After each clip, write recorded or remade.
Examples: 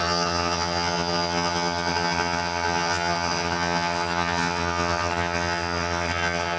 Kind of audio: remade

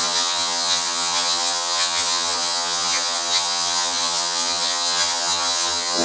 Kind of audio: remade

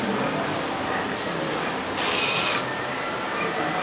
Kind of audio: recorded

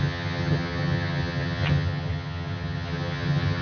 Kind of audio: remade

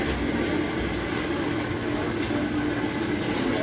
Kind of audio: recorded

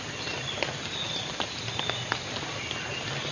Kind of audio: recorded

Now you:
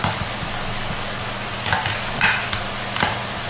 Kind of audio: recorded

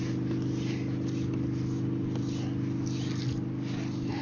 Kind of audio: recorded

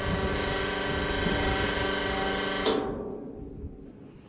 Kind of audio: recorded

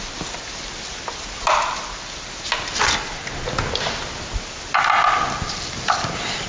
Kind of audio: recorded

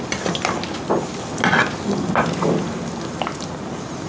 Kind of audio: recorded